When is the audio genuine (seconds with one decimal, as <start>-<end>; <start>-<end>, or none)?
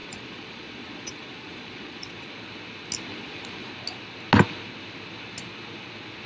2.3-3.1; 3.7-6.3